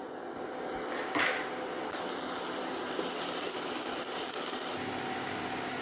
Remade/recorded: recorded